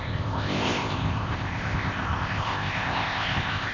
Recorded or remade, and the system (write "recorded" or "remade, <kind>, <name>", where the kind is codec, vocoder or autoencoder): remade, codec, ZipCodec